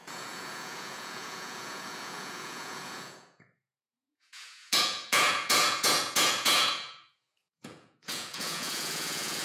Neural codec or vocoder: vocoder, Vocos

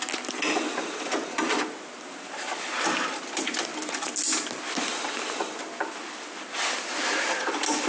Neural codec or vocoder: none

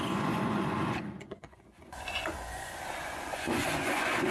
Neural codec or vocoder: vocoder, Vocos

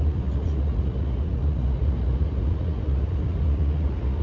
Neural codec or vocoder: vocoder, Vocos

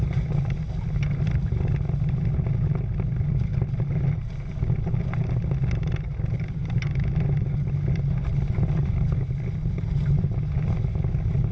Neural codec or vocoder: none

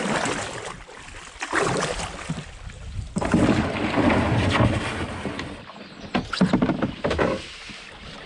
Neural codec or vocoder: none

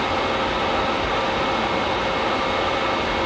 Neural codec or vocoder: none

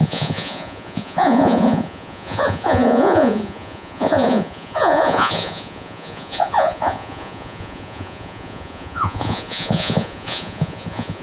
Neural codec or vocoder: vocoder, Vocos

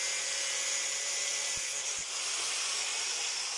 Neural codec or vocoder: none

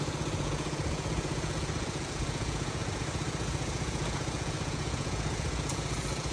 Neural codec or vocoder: vocoder, Vocos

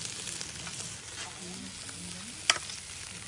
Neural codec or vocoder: none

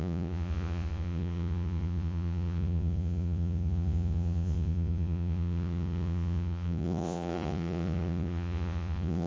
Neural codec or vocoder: vocoder, Vocos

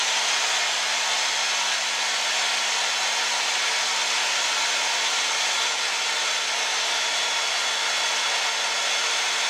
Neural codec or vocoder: none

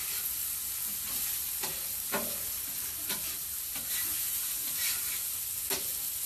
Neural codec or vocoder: none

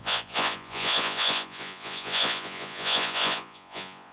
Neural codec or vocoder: vocoder, Vocos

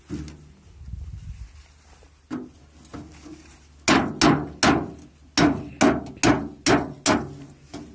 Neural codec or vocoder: none